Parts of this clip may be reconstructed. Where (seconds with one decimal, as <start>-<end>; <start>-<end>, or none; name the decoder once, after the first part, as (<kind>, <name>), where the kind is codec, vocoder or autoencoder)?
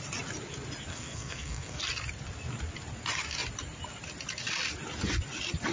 0.9-1.8 (codec, SNAC)